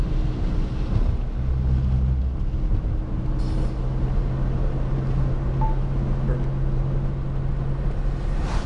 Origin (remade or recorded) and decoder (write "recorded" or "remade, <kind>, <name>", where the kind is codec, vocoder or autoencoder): recorded